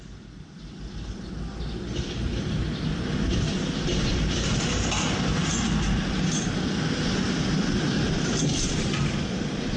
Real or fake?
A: real